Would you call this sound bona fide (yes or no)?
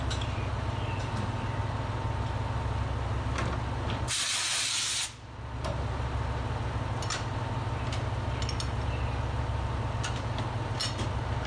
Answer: yes